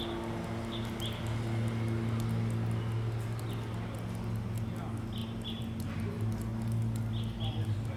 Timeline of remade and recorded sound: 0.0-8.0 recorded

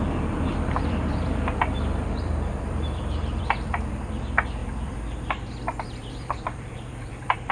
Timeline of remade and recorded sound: 0.0-7.5 remade

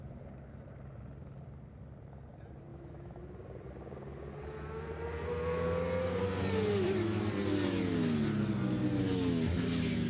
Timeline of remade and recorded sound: 0.0-2.7 recorded; 2.7-3.2 remade; 3.2-10.1 recorded

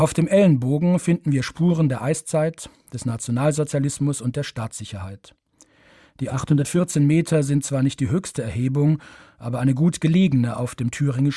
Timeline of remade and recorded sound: 0.0-6.3 recorded; 6.3-6.9 remade; 6.9-11.4 recorded